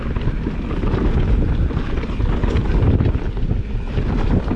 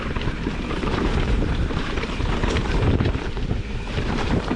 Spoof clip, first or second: second